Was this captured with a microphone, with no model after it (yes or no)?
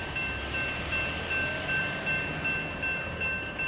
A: yes